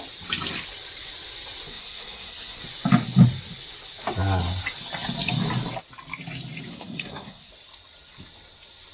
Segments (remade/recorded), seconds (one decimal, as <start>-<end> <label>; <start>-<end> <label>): 0.0-1.7 recorded; 1.7-2.6 remade; 2.6-6.7 recorded; 6.7-7.5 remade; 7.5-8.9 recorded